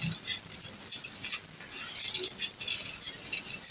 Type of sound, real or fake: real